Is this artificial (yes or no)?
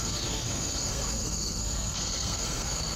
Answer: yes